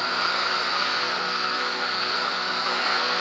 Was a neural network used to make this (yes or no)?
yes